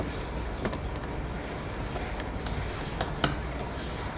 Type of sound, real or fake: real